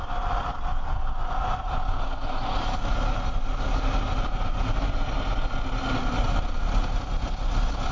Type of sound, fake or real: real